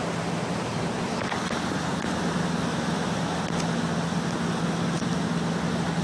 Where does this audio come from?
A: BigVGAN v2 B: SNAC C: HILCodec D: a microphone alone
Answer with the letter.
D